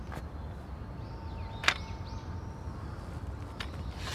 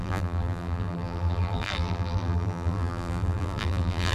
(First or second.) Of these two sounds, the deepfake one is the second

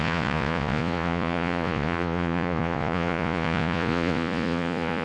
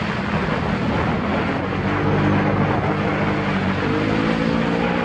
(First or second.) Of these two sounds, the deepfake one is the first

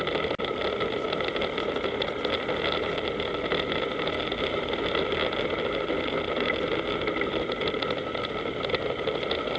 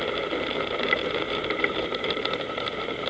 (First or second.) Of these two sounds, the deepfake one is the second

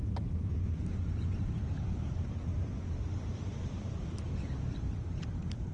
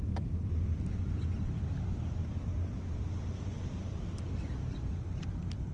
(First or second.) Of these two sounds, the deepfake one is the first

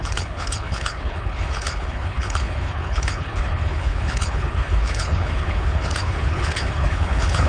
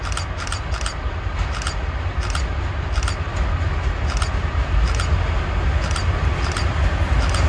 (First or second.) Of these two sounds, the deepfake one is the first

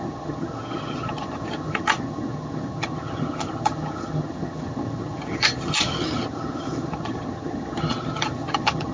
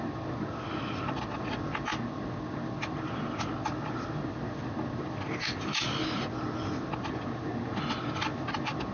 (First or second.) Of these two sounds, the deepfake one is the first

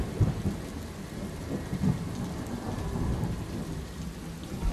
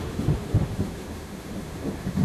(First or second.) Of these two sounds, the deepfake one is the second